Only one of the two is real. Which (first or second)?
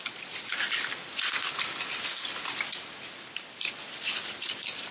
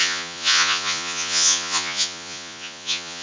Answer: first